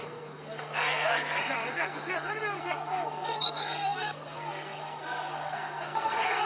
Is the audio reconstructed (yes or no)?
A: yes